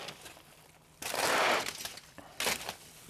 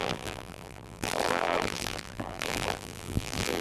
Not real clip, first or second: second